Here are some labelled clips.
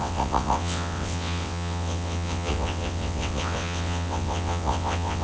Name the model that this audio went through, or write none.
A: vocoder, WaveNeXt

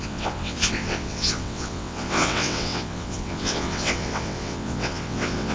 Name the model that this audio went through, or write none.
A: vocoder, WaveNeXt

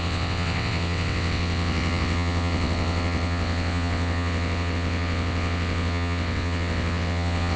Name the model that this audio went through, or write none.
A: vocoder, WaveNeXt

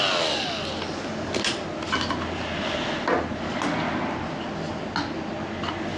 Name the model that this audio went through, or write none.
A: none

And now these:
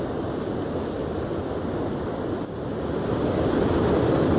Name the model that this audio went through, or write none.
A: none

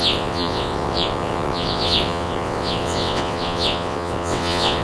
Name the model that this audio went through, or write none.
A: vocoder, WaveNeXt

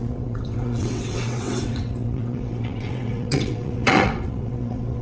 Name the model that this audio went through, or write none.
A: vocoder, WaveNeXt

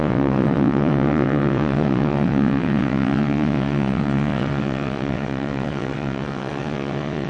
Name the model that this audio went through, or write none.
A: vocoder, WaveNeXt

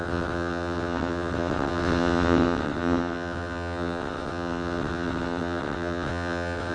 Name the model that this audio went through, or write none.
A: vocoder, WaveNeXt